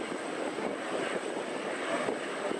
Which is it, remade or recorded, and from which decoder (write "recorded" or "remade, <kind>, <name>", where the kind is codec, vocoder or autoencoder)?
remade, vocoder, BigVGAN v2